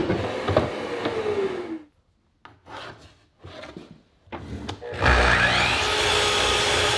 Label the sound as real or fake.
real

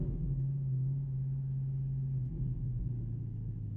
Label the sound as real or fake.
fake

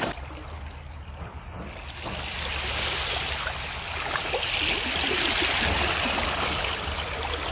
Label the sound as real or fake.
real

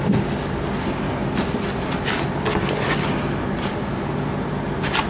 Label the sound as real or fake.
real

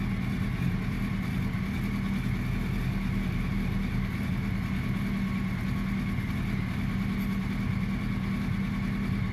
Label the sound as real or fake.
real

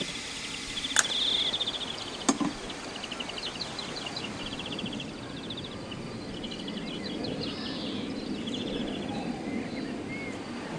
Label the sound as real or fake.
real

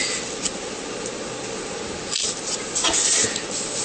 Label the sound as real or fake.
real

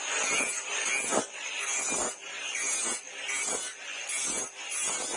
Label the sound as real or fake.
real